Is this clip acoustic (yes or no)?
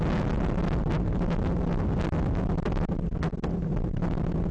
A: yes